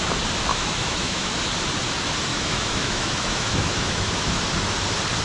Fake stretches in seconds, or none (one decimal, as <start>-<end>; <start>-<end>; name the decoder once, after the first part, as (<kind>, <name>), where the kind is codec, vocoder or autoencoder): 0.5-1.3 (autoencoder, DAC-VAE); 2.3-4.4

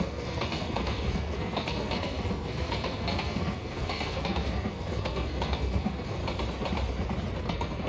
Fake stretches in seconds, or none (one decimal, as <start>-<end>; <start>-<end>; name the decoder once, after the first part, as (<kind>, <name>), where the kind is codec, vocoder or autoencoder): 0.0-6.2 (codec, SNAC); 7.4-7.9

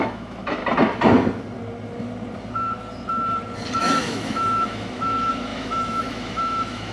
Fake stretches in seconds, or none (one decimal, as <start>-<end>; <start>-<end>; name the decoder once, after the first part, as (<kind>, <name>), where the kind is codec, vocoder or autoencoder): 0.0-0.6 (autoencoder, DAC-VAE); 3.8-6.9

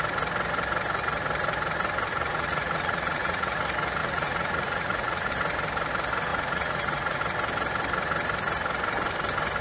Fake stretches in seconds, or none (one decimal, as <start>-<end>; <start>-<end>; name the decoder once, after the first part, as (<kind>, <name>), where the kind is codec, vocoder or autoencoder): 2.1-3.6 (vocoder, Vocos); 4.0-5.3; 6.3-7.2

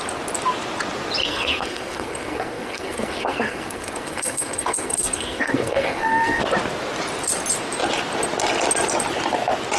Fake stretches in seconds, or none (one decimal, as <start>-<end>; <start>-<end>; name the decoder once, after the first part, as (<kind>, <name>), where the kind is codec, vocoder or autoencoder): 1.2-6.4 (codec, SNAC)

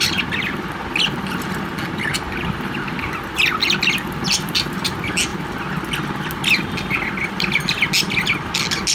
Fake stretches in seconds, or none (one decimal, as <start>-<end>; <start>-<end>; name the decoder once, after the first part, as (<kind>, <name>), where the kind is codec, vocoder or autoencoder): none